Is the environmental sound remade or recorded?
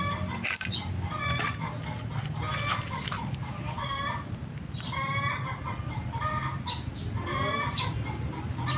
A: recorded